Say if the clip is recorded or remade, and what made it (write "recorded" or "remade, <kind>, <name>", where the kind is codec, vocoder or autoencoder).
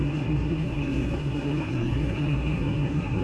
remade, codec, SNAC